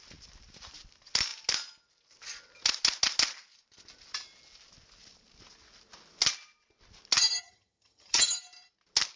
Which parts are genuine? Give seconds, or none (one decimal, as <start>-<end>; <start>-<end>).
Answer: 0.0-7.4; 8.2-9.2